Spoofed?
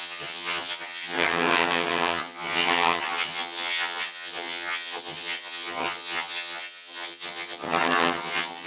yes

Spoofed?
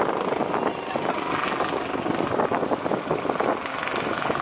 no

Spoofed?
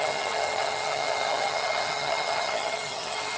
yes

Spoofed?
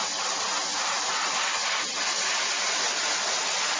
no